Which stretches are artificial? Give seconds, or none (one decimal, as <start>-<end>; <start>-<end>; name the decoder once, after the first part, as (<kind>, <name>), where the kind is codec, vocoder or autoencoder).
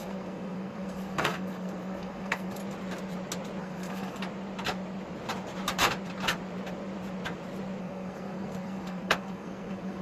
0.0-2.6 (codec, SNAC); 3.6-4.2; 7.8-10.0